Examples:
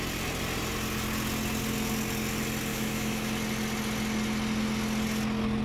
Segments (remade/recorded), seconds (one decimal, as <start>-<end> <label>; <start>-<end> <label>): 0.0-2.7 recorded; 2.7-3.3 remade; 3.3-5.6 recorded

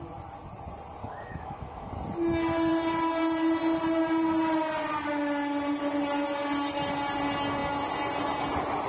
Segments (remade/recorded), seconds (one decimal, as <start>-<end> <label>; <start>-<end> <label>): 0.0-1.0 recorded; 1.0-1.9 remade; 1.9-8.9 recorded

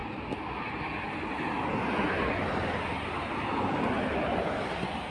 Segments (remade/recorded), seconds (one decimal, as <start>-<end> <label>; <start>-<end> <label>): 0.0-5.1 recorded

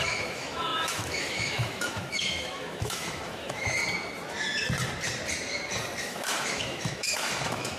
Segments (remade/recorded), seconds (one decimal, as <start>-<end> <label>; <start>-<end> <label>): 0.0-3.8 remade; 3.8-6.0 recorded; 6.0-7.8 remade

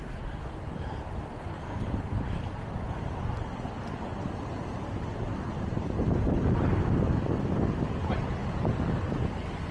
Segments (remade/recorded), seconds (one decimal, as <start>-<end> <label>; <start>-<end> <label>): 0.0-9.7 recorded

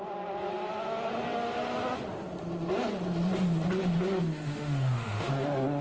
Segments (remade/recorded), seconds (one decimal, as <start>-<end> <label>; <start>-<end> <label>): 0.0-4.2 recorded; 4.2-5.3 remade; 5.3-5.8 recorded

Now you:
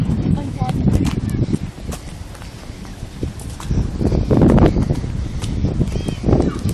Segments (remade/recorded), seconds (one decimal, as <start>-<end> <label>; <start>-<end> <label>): 0.0-0.7 remade; 0.7-6.7 recorded

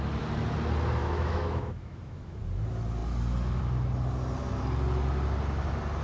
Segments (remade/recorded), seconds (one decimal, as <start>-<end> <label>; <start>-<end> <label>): 0.0-1.0 recorded; 1.0-2.4 remade; 2.4-6.0 recorded